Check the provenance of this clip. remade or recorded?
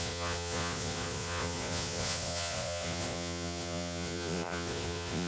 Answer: remade